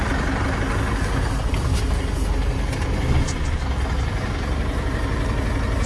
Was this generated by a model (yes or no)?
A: no